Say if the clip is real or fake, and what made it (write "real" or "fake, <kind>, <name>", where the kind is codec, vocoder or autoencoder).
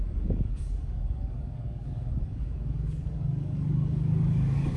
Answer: fake, codec, DAC